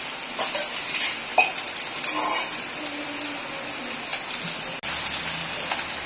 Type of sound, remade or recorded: recorded